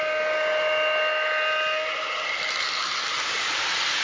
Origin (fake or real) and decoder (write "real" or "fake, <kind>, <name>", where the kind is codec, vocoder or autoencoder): real